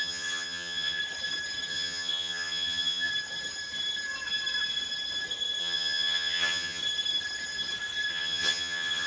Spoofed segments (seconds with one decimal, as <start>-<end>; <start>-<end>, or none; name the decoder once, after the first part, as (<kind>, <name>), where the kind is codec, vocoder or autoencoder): 0.0-1.0 (vocoder, HiFi-GAN); 1.7-3.1; 5.6-6.8; 8.1-9.1